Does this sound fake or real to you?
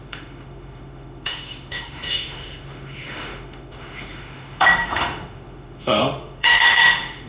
fake